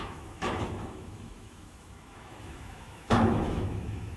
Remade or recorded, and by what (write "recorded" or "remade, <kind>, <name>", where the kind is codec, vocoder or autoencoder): remade, autoencoder, DAC-VAE